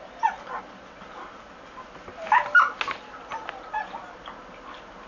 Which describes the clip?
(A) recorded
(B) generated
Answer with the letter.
A